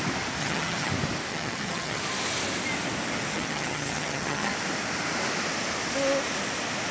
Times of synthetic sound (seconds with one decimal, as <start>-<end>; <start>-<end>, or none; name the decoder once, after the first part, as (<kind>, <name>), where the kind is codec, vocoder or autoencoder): 0.4-0.9 (vocoder, HiFi-GAN); 1.3-2.0; 3.3-4.5